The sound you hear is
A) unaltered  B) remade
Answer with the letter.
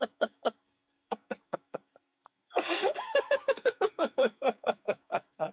B